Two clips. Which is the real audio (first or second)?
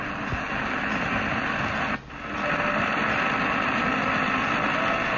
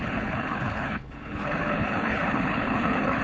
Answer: first